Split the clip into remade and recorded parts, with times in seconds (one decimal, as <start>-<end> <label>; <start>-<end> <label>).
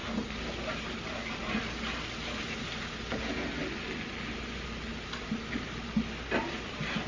0.0-7.1 recorded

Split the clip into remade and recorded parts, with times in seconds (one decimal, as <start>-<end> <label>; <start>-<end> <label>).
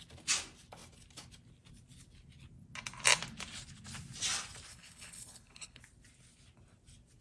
0.0-4.7 recorded; 4.7-5.8 remade; 5.8-7.2 recorded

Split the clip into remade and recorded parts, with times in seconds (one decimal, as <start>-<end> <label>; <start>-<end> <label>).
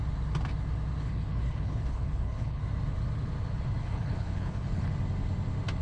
0.0-1.0 recorded; 1.0-2.6 remade; 2.6-3.8 recorded; 3.8-4.9 remade; 4.9-5.8 recorded